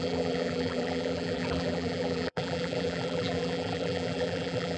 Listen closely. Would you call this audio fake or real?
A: fake